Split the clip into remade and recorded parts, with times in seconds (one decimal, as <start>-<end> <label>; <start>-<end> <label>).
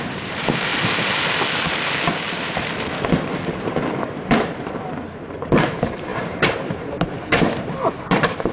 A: 0.0-0.7 remade; 0.7-2.3 recorded; 2.3-8.5 remade